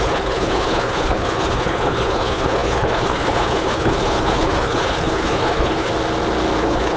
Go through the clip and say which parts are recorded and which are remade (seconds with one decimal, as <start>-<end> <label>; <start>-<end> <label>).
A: 0.0-5.9 remade; 5.9-6.6 recorded; 6.6-7.0 remade